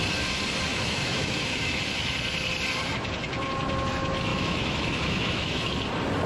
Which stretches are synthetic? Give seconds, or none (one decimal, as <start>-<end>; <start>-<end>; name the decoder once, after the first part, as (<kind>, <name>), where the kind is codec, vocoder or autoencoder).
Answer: 0.7-1.8 (autoencoder, DAC-VAE); 4.3-5.7